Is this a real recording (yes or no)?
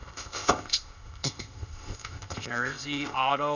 no